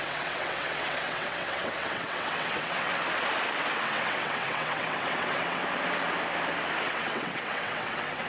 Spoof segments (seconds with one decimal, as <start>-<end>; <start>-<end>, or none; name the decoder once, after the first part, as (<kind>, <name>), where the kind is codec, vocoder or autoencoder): 0.0-2.9 (vocoder, WaveNeXt); 3.7-5.6; 6.8-8.3